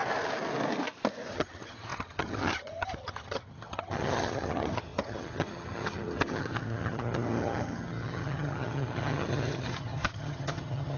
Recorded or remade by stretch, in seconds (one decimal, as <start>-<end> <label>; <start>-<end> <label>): 0.0-1.3 recorded; 1.3-11.0 remade